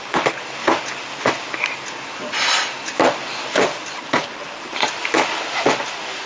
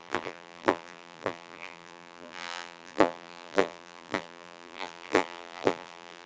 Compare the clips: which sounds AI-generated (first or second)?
second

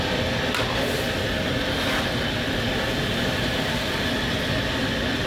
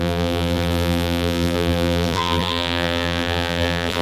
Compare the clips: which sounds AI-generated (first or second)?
second